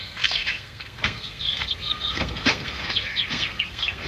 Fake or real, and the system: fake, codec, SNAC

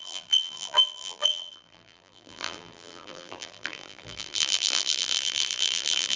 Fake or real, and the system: fake, vocoder, BigVGAN v2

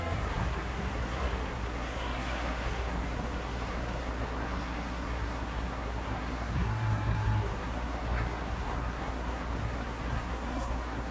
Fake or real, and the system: fake, codec, SNAC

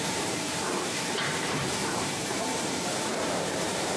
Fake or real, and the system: fake, vocoder, BigVGAN v2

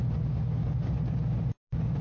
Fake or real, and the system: real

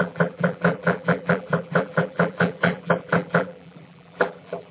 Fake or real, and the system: fake, vocoder, BigVGAN v2